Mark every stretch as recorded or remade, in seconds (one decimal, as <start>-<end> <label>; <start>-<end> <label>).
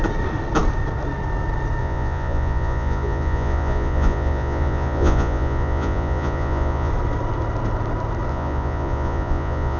0.0-1.8 recorded; 1.8-6.9 remade; 6.9-8.3 recorded; 8.3-9.8 remade